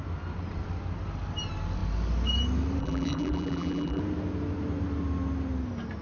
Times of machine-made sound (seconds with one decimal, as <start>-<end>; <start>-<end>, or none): 2.8-4.0